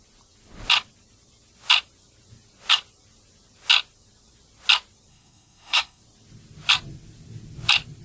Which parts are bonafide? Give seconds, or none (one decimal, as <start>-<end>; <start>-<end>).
0.0-5.1; 6.0-8.0